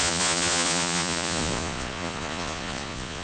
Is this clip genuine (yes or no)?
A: no